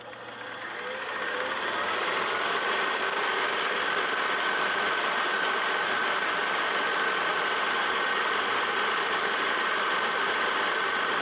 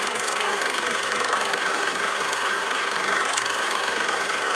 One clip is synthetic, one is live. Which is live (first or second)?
first